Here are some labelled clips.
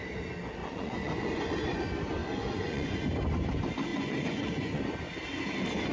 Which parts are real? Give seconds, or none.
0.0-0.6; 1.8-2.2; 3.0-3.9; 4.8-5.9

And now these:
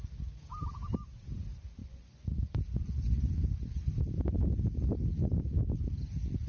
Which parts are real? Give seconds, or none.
0.0-1.8; 2.5-6.5

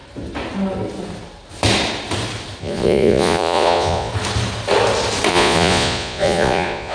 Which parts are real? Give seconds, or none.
0.0-2.6; 4.1-5.3

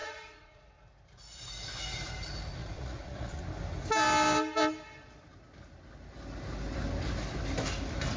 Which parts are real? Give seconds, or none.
0.7-2.6; 3.4-8.2

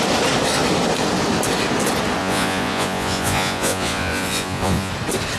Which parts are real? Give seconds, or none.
0.0-2.2; 4.9-5.4